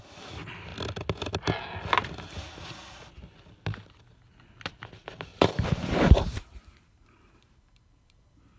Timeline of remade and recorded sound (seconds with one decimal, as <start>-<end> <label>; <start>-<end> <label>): 0.0-5.3 recorded; 5.3-8.2 remade; 8.2-8.6 recorded